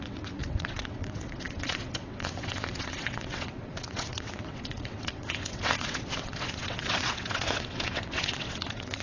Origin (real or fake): fake